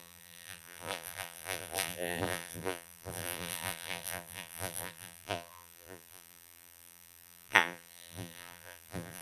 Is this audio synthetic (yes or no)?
yes